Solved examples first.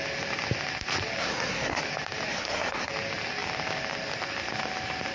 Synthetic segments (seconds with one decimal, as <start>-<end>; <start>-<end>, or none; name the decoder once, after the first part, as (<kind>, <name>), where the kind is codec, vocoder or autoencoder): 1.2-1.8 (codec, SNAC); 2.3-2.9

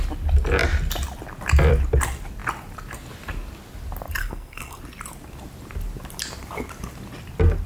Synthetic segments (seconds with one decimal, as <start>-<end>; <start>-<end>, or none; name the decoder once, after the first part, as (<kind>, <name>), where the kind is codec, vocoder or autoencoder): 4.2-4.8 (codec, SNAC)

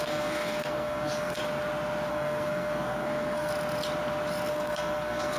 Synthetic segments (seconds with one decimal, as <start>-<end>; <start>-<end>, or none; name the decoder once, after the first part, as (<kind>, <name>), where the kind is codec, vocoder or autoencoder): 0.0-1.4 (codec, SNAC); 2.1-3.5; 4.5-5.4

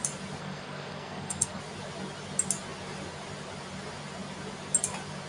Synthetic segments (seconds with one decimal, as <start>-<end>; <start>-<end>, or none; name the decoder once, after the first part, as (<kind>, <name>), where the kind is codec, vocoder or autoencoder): 0.4-1.6 (codec, SNAC)